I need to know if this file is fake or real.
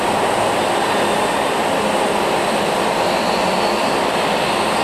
real